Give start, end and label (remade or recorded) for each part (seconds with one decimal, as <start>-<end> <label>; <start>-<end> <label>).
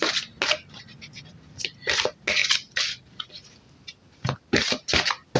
0.0-5.4 recorded